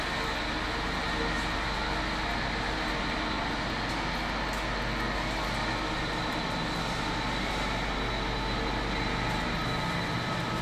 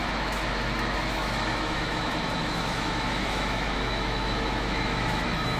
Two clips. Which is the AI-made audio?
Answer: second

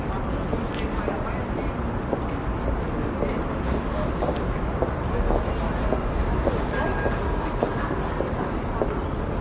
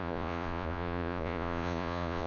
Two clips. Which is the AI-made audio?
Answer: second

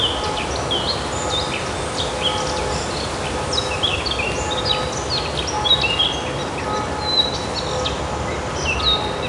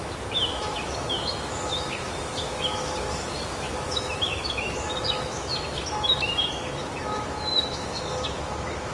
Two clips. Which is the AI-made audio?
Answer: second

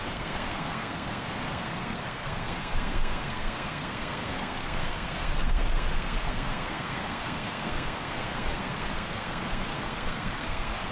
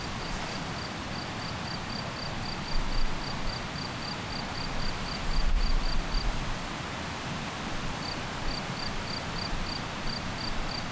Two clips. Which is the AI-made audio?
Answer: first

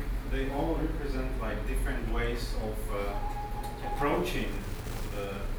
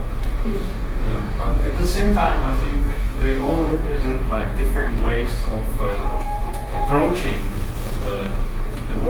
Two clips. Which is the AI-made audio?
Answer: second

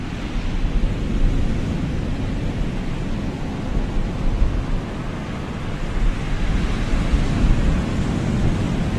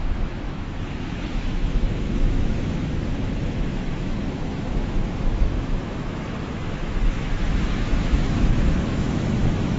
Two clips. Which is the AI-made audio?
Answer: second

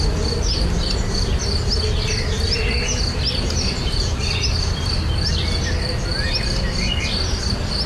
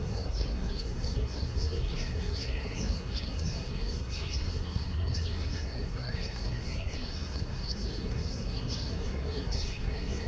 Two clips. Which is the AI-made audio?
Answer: second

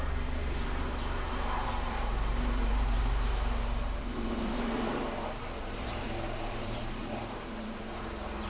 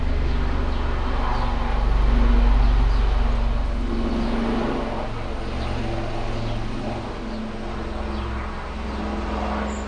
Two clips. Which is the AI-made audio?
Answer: first